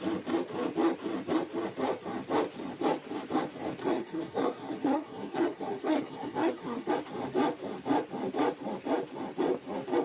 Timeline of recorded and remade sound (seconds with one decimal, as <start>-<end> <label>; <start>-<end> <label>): 0.0-3.8 recorded; 3.8-6.9 remade; 6.9-10.0 recorded